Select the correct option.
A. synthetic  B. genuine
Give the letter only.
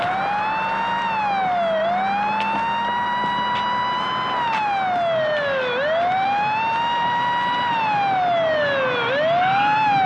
B